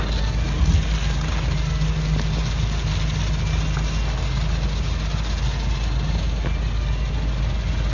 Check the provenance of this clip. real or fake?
real